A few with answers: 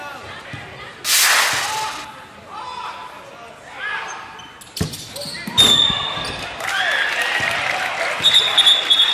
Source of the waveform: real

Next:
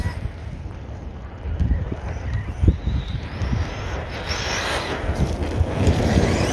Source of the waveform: fake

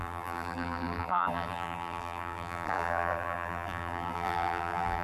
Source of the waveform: fake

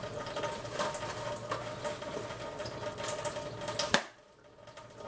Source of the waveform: real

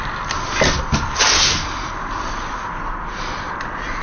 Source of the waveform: real